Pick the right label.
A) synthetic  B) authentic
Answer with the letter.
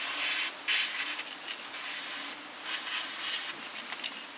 B